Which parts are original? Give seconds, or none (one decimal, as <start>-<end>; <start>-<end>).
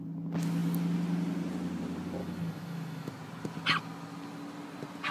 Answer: 0.0-2.2; 3.1-5.1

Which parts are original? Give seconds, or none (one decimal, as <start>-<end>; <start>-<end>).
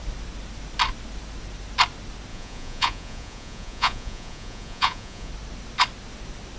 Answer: 0.0-2.3; 5.3-6.6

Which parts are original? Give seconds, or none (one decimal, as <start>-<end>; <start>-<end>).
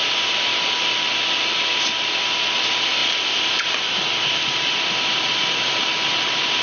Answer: 0.0-6.6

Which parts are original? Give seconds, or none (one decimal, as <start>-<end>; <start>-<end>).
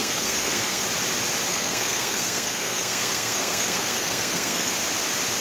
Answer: 0.8-1.5; 4.7-5.4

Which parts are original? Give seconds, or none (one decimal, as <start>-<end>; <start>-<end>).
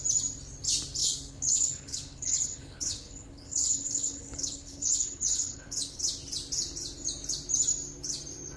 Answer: 0.0-1.0; 6.0-8.6